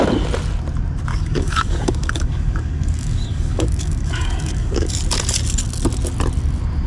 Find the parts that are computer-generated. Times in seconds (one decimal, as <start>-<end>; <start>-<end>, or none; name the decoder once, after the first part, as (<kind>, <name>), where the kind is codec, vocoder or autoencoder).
1.1-4.9 (codec, DAC)